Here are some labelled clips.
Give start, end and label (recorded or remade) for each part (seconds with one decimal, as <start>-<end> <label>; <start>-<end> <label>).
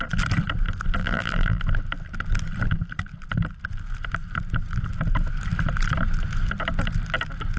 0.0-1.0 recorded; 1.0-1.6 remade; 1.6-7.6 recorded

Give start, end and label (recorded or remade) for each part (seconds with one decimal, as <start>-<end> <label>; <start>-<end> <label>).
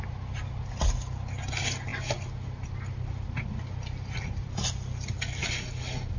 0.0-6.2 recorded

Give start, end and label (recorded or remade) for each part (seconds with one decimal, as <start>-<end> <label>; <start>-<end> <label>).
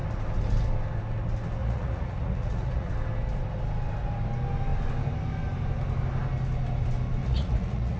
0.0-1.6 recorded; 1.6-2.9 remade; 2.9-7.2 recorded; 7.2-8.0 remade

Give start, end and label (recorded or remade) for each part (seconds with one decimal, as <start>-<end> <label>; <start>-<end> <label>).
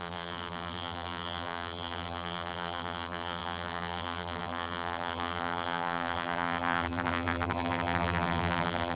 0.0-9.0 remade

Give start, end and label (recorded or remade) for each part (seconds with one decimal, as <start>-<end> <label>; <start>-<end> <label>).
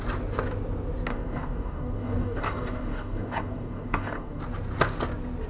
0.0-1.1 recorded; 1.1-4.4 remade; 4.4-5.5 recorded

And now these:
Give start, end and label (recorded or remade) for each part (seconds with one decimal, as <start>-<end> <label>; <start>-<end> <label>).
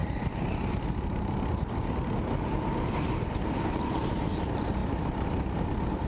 0.0-3.7 recorded; 3.7-6.1 remade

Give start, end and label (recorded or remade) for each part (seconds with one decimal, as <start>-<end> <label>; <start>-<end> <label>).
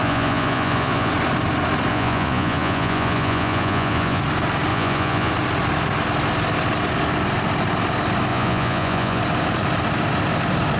0.0-1.1 remade; 1.1-1.9 recorded; 1.9-4.2 remade; 4.2-4.7 recorded; 4.7-5.3 remade; 5.3-8.3 recorded; 8.3-9.2 remade; 9.2-10.8 recorded